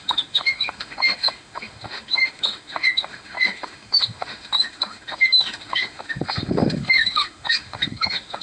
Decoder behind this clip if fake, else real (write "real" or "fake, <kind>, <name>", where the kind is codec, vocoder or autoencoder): fake, autoencoder, DAC-VAE